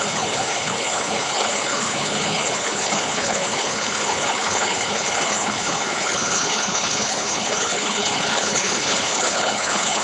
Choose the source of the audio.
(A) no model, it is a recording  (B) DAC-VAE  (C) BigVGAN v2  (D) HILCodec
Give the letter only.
D